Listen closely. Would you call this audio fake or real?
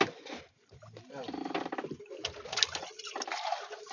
real